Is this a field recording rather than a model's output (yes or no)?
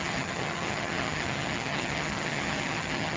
no